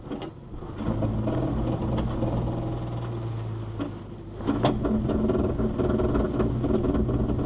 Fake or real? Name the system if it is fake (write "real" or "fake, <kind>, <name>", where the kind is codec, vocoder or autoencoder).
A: real